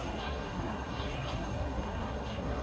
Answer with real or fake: fake